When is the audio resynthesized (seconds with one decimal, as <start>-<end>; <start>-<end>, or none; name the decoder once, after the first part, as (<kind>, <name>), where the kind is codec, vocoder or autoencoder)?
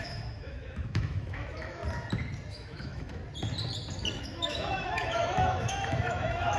0.0-1.8 (autoencoder, DAC-VAE); 2.5-3.2; 4.2-6.6